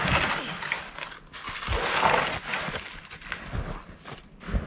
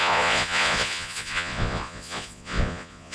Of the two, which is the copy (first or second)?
second